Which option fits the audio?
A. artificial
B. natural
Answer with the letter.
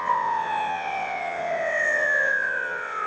A